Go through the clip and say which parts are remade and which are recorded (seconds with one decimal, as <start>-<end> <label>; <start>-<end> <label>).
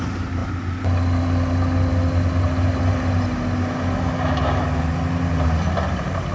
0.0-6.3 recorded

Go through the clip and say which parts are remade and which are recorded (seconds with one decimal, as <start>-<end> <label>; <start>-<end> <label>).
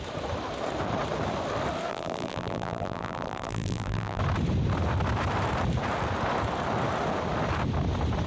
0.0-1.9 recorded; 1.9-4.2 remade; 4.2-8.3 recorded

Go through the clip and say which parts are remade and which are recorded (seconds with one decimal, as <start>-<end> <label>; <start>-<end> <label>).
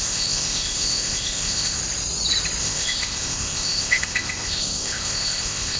0.0-1.8 remade; 1.8-2.6 recorded; 2.6-5.8 remade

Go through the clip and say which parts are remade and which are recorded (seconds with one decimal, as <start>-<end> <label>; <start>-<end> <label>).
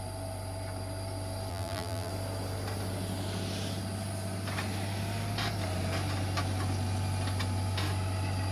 0.0-1.5 recorded; 1.5-2.1 remade; 2.1-8.5 recorded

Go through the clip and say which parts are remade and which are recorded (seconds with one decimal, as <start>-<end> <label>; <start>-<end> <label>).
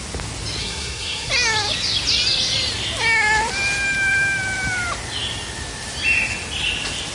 0.0-0.6 recorded; 0.6-1.3 remade; 1.3-7.1 recorded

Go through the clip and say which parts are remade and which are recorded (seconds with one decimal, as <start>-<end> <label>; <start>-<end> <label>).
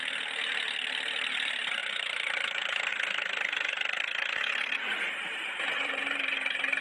0.0-1.8 recorded; 1.8-2.9 remade; 2.9-5.3 recorded; 5.3-6.2 remade; 6.2-6.8 recorded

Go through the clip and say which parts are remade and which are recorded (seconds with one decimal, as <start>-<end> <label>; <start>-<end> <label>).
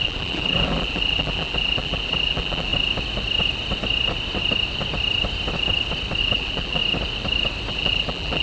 0.0-2.7 remade; 2.7-6.2 recorded; 6.2-6.8 remade; 6.8-7.7 recorded; 7.7-8.4 remade